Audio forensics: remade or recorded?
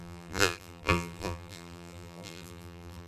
remade